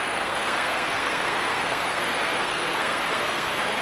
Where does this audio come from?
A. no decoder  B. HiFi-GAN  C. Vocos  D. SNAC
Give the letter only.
D